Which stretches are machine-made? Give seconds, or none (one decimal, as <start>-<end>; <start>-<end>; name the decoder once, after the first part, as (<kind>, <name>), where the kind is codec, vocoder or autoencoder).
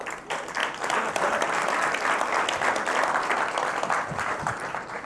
none